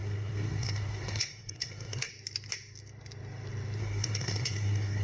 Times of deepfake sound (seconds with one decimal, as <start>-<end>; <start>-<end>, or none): 0.0-2.1; 3.8-5.0